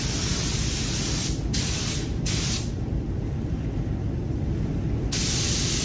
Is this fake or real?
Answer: real